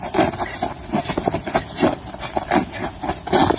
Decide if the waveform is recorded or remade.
recorded